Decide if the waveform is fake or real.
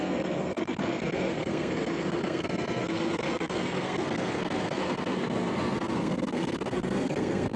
fake